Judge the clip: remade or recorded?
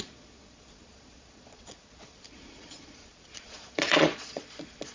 remade